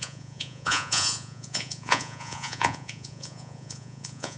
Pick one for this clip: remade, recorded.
remade